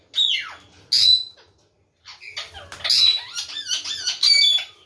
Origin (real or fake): real